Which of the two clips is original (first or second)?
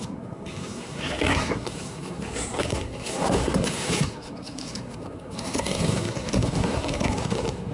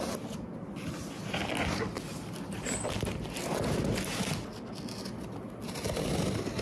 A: second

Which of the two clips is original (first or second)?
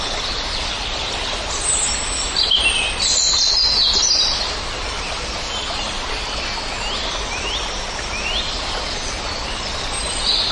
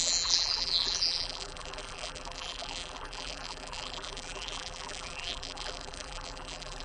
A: first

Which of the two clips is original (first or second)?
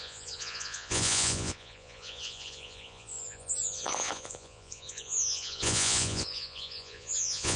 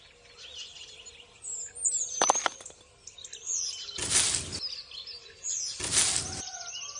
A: second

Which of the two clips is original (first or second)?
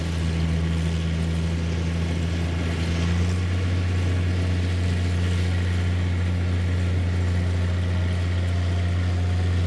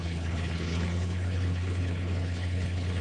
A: first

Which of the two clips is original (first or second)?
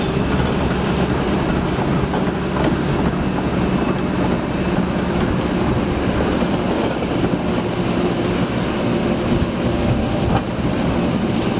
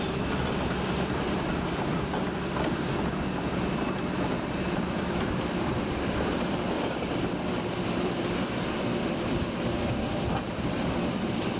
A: first